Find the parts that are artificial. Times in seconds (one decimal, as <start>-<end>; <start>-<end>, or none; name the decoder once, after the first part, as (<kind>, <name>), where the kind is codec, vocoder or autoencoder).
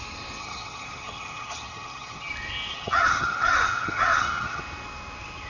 0.4-2.3 (vocoder, HiFi-GAN); 2.7-4.6